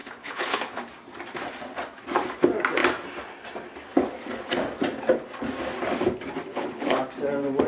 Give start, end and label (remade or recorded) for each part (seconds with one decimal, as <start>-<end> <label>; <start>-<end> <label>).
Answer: 0.0-0.8 remade; 0.8-6.5 recorded; 6.5-7.0 remade; 7.0-7.7 recorded